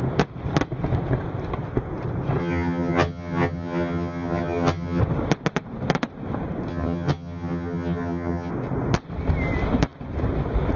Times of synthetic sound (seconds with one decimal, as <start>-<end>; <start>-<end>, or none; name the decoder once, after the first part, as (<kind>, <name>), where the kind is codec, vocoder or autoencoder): 2.4-5.0 (vocoder, HiFi-GAN); 6.7-8.5